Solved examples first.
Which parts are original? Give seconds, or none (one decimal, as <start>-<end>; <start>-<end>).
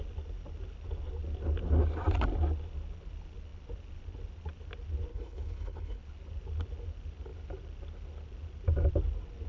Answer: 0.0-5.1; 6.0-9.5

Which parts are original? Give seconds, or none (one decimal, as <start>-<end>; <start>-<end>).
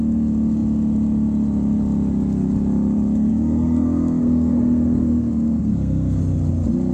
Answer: 0.0-3.3; 6.2-6.9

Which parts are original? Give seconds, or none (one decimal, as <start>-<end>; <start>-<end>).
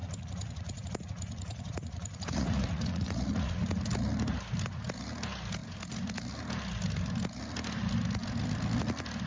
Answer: 3.8-9.3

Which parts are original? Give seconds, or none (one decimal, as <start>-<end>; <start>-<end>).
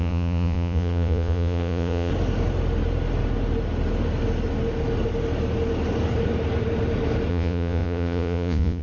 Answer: 2.1-7.3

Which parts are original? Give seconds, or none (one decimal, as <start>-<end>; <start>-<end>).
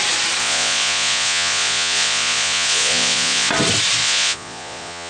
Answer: 0.0-0.4; 3.5-4.0